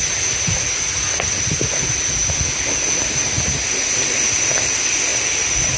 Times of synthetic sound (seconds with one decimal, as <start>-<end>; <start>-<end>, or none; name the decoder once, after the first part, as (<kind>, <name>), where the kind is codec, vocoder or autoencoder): 5.1-5.8 (vocoder, BigVGAN v2)